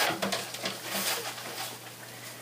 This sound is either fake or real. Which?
real